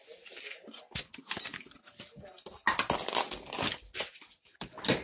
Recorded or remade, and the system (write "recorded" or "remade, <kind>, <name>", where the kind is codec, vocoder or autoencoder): recorded